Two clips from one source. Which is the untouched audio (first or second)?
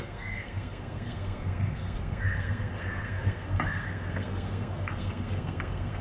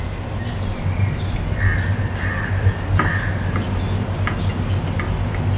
second